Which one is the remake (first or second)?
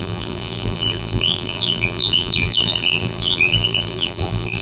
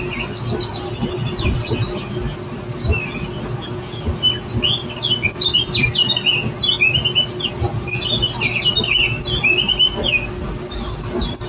first